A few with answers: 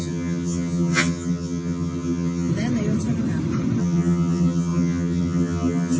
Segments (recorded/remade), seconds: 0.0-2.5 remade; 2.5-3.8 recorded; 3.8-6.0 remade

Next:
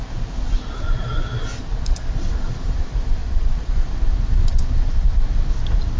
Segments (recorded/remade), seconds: 0.0-3.2 recorded; 3.2-3.7 remade; 3.7-6.0 recorded

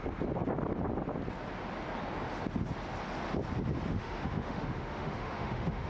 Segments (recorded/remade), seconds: 0.0-3.9 recorded; 3.9-5.9 remade

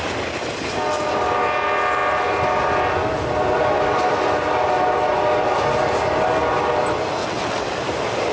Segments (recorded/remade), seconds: 0.0-7.2 recorded; 7.2-7.8 remade; 7.8-8.3 recorded

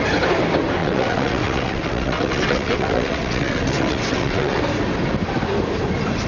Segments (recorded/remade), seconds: 0.0-0.8 recorded; 0.8-4.6 remade; 4.6-6.3 recorded

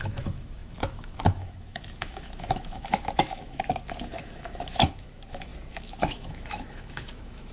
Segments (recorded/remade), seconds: 0.0-7.5 remade

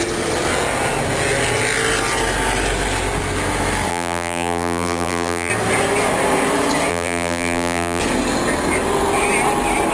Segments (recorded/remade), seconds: 0.0-3.9 recorded; 3.9-5.5 remade; 5.5-6.9 recorded; 6.9-8.0 remade; 8.0-9.9 recorded

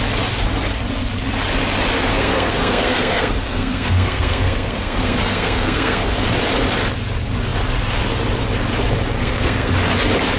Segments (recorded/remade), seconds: 0.0-2.1 recorded; 2.1-6.1 remade; 6.1-9.2 recorded; 9.2-9.7 remade; 9.7-10.4 recorded